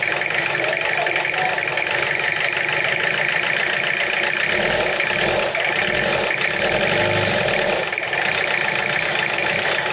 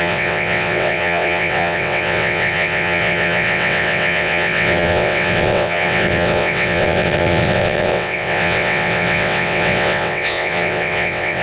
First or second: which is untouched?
first